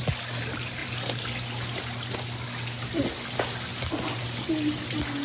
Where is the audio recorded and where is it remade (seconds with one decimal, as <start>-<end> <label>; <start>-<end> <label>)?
0.0-5.2 recorded